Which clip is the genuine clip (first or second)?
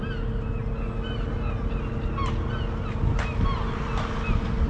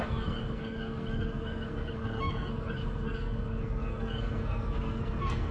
first